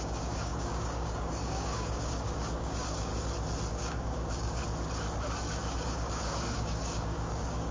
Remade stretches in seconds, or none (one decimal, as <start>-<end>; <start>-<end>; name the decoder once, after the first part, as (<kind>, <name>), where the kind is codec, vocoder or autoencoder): 0.0-3.1 (codec, DAC); 3.7-4.6; 5.7-7.7